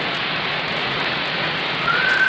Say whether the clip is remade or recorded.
remade